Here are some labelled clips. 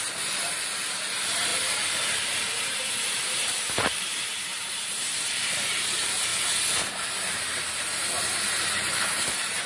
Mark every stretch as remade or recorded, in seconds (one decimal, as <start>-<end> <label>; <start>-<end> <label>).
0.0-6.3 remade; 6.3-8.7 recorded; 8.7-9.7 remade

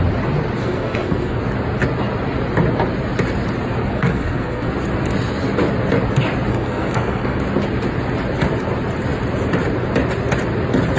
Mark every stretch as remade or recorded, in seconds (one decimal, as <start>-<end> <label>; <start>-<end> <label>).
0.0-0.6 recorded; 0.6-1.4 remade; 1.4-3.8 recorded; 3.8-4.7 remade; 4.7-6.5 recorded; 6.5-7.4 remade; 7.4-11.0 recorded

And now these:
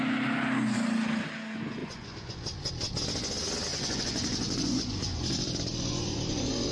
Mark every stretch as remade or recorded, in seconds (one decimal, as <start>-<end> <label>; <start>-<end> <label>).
0.0-1.8 recorded; 1.8-2.7 remade; 2.7-3.7 recorded; 3.7-6.7 remade

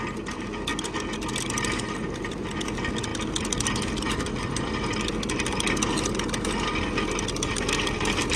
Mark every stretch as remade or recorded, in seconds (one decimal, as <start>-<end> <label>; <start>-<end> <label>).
0.0-8.4 recorded